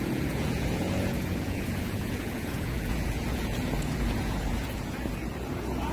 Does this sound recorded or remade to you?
remade